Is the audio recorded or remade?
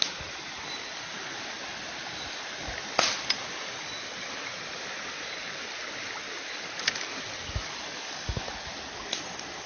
recorded